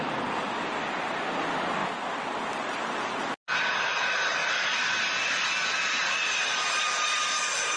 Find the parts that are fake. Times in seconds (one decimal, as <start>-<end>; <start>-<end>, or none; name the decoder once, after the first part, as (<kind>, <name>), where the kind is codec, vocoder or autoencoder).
none